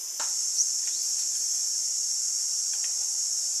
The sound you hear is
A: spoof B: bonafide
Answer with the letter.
B